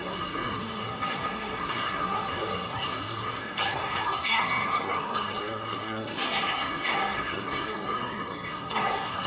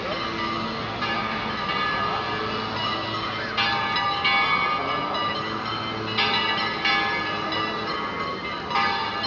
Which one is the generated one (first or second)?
first